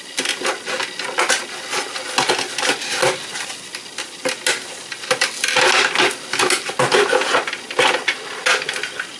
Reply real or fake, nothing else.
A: real